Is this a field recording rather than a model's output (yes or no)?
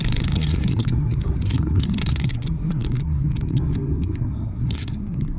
no